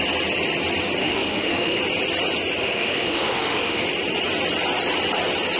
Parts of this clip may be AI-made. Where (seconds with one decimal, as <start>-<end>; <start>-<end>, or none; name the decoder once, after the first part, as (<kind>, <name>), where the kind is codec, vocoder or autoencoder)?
1.0-1.8 (autoencoder, DAC-VAE); 2.6-3.8